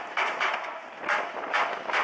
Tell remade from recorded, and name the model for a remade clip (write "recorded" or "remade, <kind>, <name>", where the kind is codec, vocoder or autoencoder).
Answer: recorded